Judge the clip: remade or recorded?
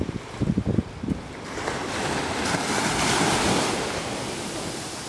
recorded